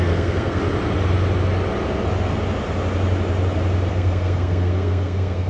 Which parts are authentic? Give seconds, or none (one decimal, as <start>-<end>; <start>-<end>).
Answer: 0.6-3.9